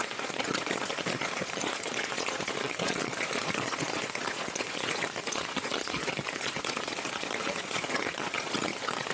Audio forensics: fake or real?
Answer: fake